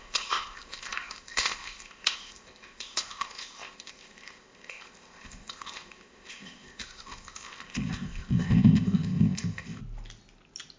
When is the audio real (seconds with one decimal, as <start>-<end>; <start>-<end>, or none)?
9.8-10.8